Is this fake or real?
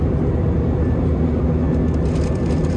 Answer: real